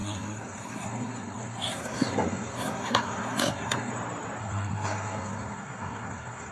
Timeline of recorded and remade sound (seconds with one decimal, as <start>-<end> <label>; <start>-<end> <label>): 0.0-3.9 remade; 3.9-4.4 recorded; 4.4-6.5 remade